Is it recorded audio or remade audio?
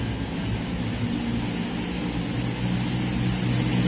recorded